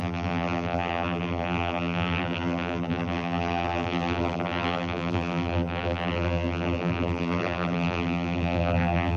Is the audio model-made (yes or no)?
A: yes